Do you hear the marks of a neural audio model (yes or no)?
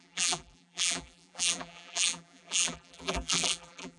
yes